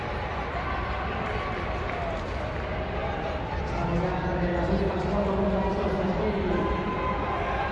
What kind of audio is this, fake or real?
real